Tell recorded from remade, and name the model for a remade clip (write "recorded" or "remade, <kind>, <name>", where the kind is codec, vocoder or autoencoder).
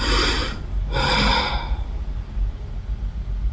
recorded